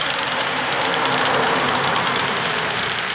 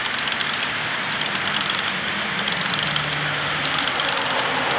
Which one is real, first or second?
second